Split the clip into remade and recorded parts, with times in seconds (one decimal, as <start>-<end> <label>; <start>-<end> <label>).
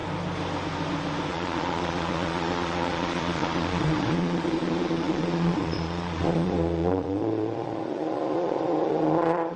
0.0-1.3 recorded; 1.3-9.6 remade